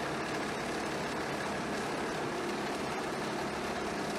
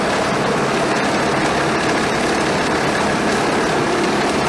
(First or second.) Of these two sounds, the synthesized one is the second